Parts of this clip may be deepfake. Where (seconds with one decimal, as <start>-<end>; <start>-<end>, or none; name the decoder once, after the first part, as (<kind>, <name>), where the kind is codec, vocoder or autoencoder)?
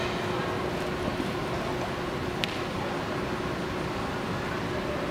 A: none